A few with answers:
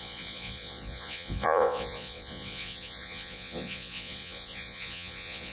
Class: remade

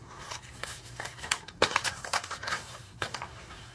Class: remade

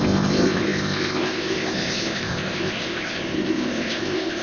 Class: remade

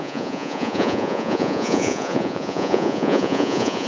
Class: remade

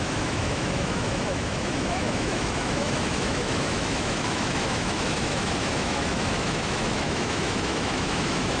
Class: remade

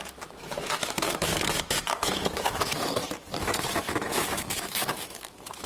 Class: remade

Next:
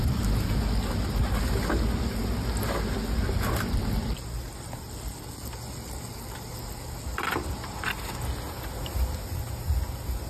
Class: recorded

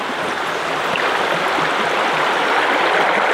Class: recorded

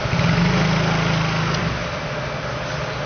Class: recorded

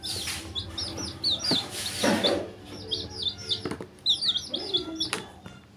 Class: recorded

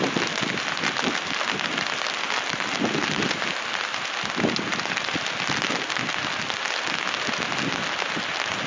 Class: recorded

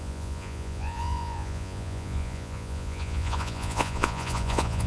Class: remade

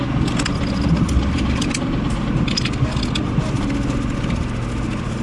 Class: recorded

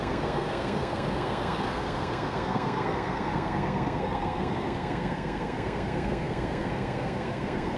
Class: remade